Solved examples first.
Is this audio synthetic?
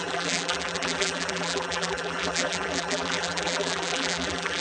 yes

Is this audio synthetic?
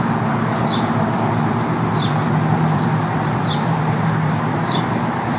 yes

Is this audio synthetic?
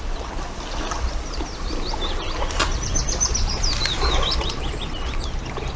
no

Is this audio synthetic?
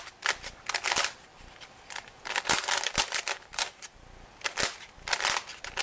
yes